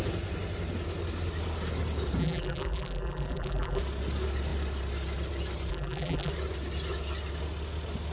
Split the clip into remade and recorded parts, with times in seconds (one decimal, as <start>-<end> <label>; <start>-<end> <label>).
0.0-2.2 recorded; 2.2-3.8 remade; 3.8-5.7 recorded; 5.7-6.3 remade; 6.3-8.1 recorded